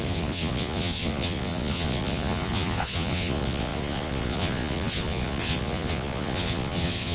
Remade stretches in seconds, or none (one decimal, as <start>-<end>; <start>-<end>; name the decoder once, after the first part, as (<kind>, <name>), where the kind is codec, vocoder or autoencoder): 0.0-7.1 (vocoder, Vocos)